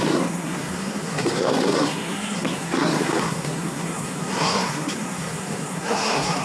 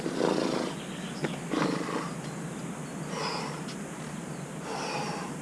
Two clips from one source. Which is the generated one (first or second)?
first